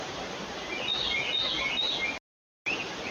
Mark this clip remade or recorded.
recorded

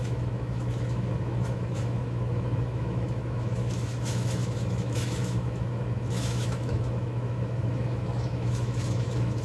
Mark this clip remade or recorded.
remade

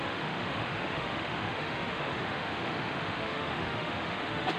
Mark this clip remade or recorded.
remade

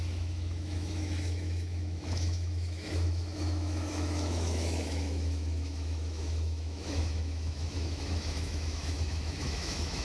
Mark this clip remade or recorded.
remade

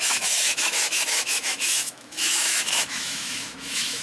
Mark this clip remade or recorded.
remade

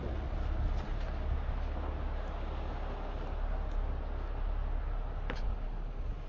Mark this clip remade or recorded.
recorded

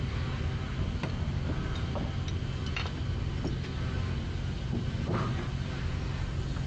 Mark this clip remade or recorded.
recorded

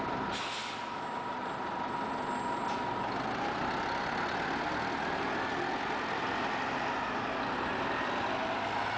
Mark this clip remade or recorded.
recorded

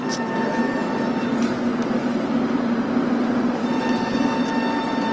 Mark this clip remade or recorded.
recorded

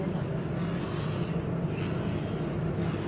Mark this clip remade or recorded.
recorded